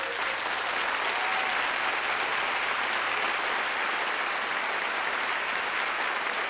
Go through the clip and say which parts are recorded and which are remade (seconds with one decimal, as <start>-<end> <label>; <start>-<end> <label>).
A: 0.0-6.5 recorded